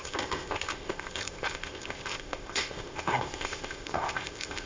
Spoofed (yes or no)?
yes